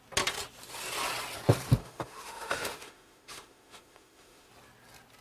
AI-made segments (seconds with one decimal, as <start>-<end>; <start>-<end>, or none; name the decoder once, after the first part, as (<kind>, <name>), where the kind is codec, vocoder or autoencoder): 1.8-4.5 (autoencoder, DAC-VAE)